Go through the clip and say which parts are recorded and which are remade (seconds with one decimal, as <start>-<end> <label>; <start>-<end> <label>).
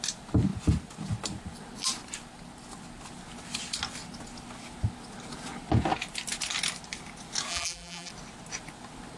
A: 0.0-7.5 recorded; 7.5-8.1 remade; 8.1-9.2 recorded